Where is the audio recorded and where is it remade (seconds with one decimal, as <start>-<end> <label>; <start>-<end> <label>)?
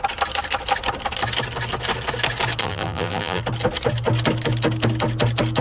0.0-2.6 recorded; 2.6-3.4 remade; 3.4-5.6 recorded